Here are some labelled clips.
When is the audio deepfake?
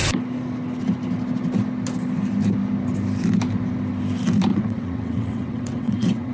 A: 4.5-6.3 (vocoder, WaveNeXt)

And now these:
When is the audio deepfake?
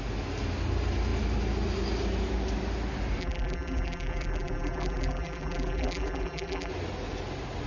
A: 3.2-6.7 (vocoder, BigVGAN v2)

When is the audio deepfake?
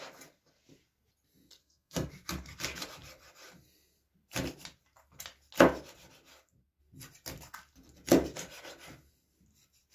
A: 1.6-2.1 (codec, SNAC)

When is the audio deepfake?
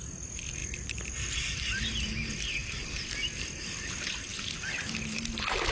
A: 0.6-1.8 (vocoder, BigVGAN v2); 2.6-3.1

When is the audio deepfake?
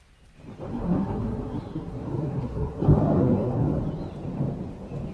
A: 0.7-3.8 (codec, SNAC)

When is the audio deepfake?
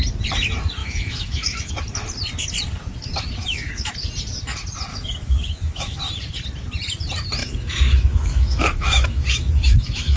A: 0.8-1.7 (autoencoder, DAC-VAE); 3.4-3.9; 4.9-6.0; 7.4-10.2